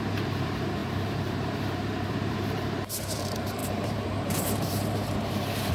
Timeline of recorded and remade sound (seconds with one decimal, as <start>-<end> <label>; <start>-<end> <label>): 0.0-5.7 remade